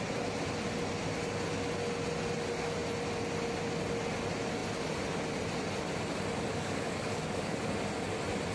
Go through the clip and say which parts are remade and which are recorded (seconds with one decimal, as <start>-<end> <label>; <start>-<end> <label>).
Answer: 0.0-6.5 recorded; 6.5-7.7 remade; 7.7-8.5 recorded